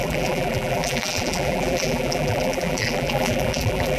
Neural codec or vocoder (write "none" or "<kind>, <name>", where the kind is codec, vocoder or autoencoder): vocoder, BigVGAN v2